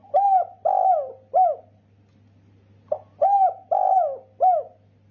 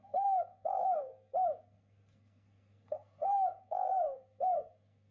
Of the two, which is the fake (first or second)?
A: second